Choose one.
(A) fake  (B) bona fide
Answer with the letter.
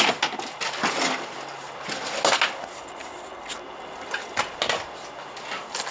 B